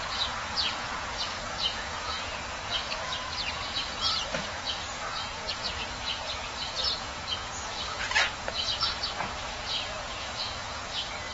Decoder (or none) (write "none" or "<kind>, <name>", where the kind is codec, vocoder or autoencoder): vocoder, Vocos